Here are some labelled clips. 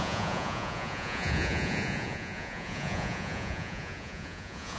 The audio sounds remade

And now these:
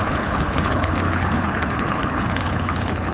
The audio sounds remade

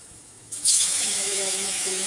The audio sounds remade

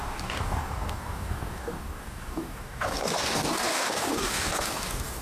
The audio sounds remade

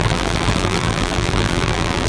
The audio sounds remade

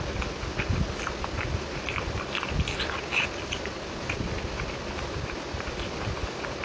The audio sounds recorded